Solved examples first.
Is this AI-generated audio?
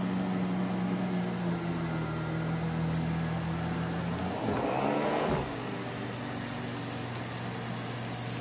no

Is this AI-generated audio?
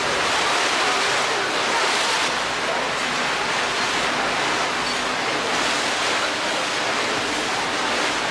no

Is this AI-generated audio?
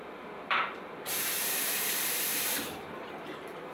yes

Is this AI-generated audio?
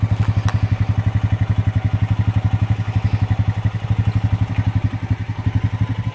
no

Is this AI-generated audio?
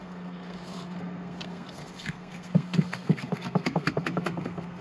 yes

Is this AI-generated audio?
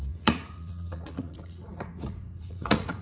yes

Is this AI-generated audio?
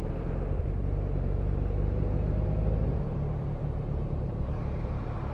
yes